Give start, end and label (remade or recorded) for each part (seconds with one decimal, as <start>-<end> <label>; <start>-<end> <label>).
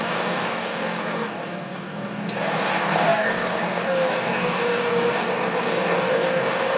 0.0-6.8 remade